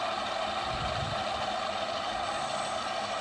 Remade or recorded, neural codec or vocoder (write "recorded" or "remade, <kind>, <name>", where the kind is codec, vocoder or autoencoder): recorded